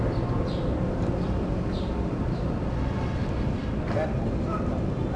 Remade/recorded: recorded